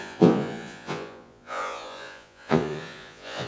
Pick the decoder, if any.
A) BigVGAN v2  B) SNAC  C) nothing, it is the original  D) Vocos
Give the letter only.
D